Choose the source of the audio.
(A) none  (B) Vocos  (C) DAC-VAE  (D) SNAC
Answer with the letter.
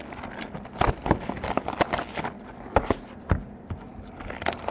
A